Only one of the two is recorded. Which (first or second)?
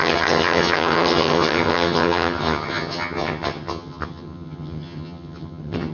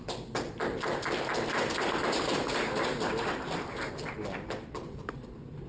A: second